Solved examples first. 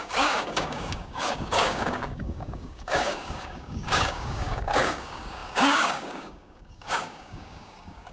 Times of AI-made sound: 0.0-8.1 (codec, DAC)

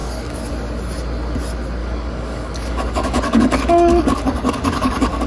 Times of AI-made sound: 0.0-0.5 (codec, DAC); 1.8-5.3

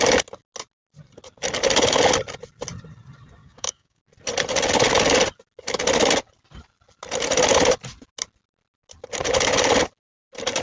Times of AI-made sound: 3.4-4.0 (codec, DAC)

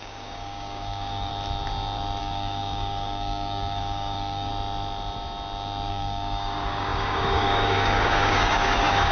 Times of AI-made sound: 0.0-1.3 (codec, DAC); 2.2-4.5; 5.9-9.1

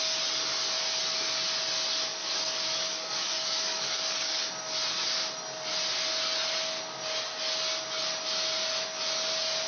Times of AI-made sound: 2.2-4.4 (codec, DAC)

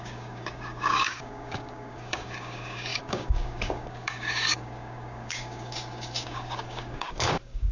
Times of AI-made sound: 0.0-7.7 (codec, DAC)

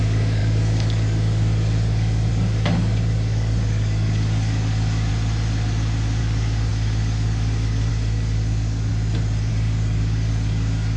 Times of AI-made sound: 0.0-5.1 (codec, DAC); 6.2-8.9; 9.5-11.0